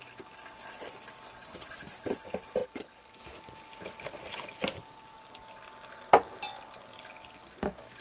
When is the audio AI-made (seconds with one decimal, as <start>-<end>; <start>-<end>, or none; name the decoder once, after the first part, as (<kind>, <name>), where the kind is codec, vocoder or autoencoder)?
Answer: none